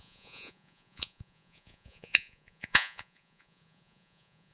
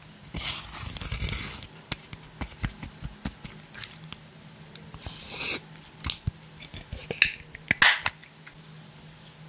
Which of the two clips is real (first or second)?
second